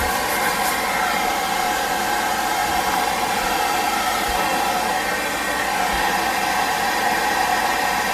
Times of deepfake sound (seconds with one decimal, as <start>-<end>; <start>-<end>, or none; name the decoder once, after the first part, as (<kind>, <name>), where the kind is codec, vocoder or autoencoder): none